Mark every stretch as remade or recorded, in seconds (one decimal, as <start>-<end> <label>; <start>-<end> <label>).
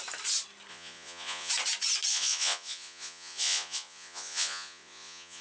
0.0-0.7 recorded; 0.7-1.5 remade; 1.5-2.1 recorded; 2.1-5.4 remade